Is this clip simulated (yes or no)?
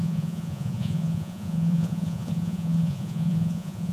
yes